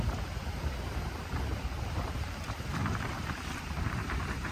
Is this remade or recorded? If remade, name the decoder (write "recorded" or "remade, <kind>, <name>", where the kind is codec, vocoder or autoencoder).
remade, vocoder, BigVGAN v2